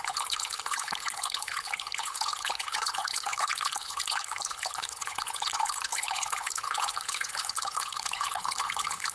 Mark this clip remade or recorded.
remade